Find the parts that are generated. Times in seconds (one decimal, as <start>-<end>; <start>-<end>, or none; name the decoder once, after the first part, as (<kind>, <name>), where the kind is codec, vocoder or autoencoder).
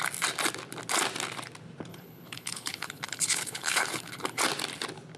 1.9-4.4 (codec, HILCodec)